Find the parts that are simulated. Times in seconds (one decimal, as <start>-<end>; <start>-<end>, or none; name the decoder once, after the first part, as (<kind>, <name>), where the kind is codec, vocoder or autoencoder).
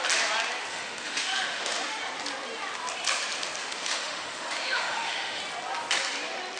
0.7-2.0 (autoencoder, DAC-VAE); 3.6-5.4